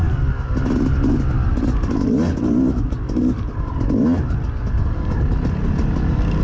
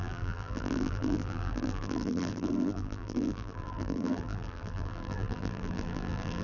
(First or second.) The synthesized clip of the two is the second